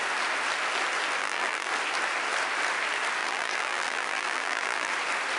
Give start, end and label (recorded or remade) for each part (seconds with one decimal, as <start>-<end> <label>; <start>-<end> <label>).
0.0-1.2 recorded; 1.2-1.7 remade; 1.7-3.2 recorded; 3.2-4.9 remade; 4.9-5.4 recorded